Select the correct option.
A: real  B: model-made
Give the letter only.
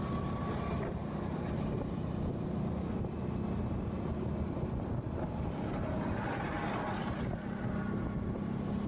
A